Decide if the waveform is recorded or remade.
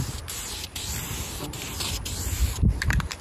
remade